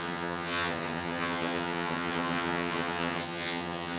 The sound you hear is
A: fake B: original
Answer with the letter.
A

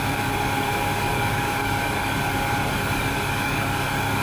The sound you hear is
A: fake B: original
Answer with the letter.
A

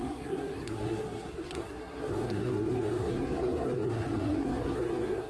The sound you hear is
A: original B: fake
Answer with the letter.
B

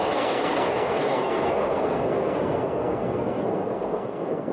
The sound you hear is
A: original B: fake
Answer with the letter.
B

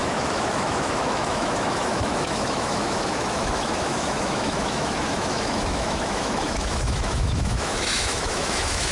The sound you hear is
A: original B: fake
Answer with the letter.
B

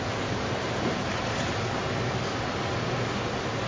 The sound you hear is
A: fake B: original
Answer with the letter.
B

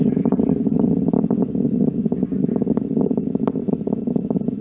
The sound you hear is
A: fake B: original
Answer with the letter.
B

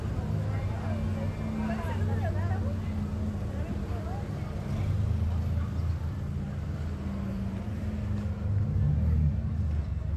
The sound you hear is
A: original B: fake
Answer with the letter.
A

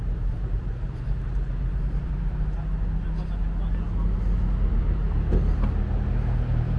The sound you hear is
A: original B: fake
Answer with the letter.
A